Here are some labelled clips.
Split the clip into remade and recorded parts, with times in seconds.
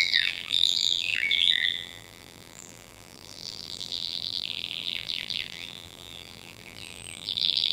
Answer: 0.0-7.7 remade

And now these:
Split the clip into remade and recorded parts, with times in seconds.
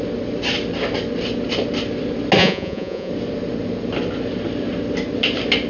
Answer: 0.0-2.4 recorded; 2.4-3.1 remade; 3.1-5.7 recorded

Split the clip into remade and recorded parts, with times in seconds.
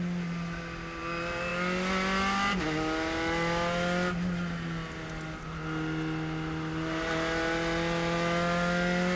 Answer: 0.0-9.2 recorded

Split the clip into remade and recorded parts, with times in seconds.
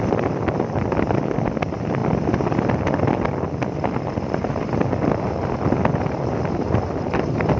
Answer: 0.0-7.6 recorded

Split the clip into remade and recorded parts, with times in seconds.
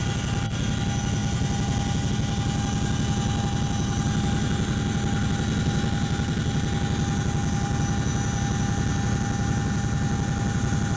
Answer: 0.0-11.0 recorded